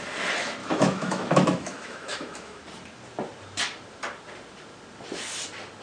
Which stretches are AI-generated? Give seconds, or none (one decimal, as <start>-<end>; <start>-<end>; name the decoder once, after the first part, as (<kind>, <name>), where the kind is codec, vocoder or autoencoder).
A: 0.6-2.6 (autoencoder, DAC-VAE)